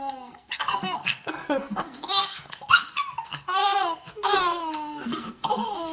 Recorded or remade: remade